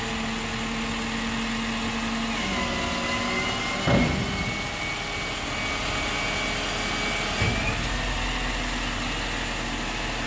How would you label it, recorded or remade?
recorded